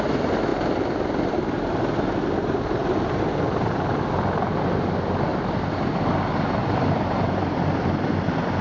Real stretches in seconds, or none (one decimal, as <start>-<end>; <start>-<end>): 0.0-6.6; 7.2-8.6